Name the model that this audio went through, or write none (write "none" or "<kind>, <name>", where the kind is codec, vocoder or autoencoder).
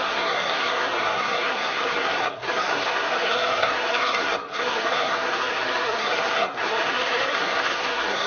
codec, SNAC